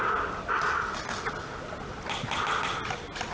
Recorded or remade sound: recorded